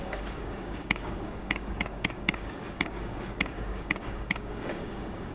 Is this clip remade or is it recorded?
remade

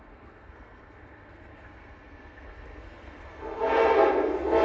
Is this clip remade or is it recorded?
remade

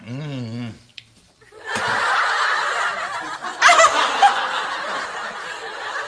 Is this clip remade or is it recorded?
recorded